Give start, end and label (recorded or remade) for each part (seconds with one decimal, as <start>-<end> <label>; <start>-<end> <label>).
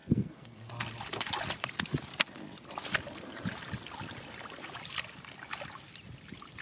0.0-0.7 remade; 0.7-6.6 recorded